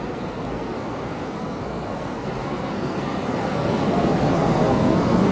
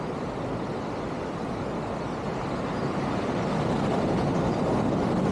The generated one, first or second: first